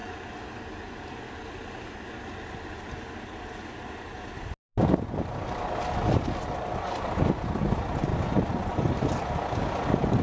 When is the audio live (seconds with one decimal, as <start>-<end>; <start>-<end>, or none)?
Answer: 0.0-10.2